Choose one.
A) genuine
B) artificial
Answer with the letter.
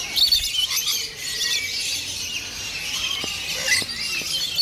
A